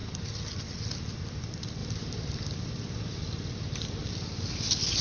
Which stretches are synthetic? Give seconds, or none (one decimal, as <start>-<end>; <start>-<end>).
none